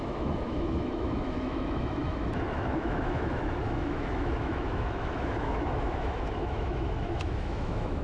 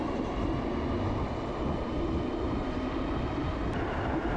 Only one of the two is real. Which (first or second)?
second